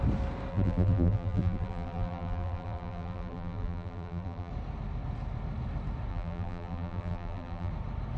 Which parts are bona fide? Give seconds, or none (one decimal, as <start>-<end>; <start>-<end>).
0.0-0.5; 4.5-6.1; 7.7-8.2